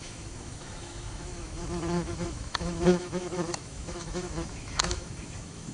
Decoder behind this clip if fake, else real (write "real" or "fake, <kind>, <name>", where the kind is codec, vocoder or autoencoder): fake, autoencoder, DAC-VAE